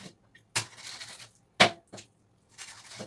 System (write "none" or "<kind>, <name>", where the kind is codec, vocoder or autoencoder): none